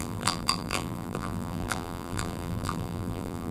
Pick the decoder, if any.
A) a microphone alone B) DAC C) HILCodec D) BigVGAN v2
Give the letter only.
D